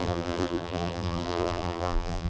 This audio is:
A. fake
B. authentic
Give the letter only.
A